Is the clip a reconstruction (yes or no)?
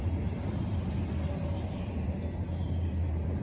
no